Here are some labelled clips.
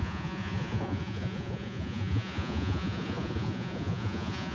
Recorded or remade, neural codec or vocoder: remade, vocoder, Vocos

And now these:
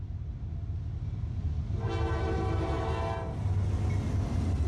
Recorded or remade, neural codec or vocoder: recorded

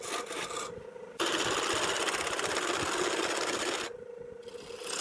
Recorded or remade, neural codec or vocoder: recorded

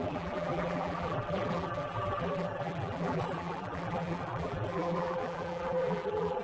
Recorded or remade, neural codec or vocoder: remade, vocoder, BigVGAN v2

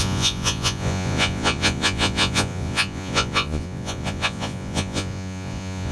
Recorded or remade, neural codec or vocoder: remade, vocoder, Vocos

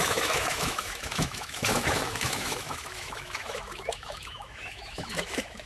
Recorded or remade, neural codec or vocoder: remade, autoencoder, DAC-VAE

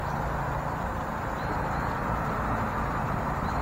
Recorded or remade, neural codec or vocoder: recorded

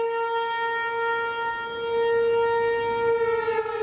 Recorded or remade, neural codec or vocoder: recorded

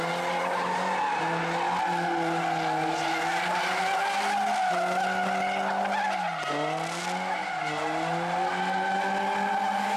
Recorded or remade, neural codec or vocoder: recorded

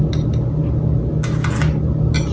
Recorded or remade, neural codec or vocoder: recorded